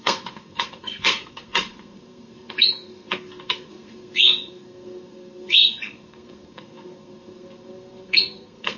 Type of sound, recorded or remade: remade